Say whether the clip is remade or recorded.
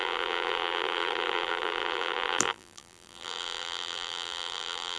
remade